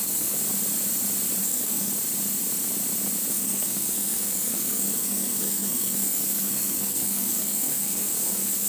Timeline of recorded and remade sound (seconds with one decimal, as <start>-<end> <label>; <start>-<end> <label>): 0.0-0.4 remade; 0.4-1.4 recorded; 1.4-1.9 remade; 1.9-3.3 recorded; 3.3-8.7 remade